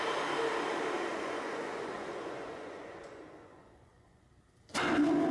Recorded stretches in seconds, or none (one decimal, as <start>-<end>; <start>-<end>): 0.0-1.1; 4.3-5.3

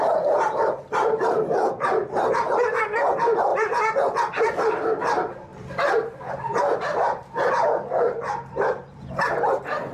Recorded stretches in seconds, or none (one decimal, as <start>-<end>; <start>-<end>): 3.5-4.4; 5.5-6.6

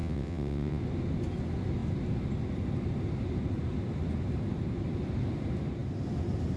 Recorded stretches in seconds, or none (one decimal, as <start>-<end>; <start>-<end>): 0.8-6.6